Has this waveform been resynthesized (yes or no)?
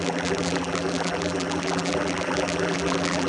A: yes